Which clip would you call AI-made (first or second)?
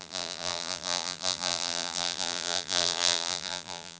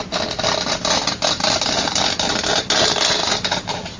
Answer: first